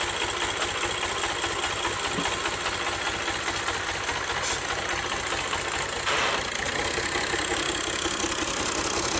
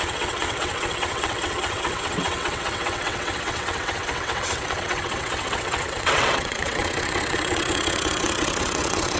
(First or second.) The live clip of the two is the first